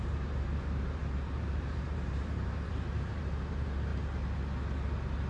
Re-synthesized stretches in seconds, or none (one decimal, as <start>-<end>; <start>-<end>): 0.0-3.9